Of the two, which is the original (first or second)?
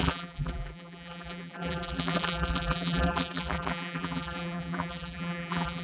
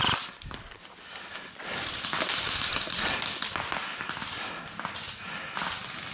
second